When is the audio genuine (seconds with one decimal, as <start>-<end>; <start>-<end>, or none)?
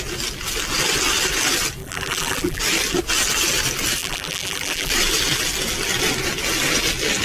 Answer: 0.0-1.8; 2.6-4.0; 4.9-7.2